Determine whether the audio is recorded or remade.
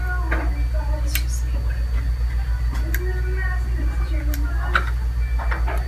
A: recorded